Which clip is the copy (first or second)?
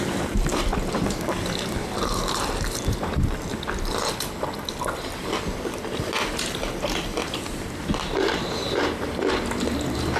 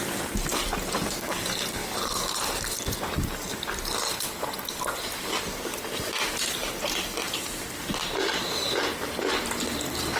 first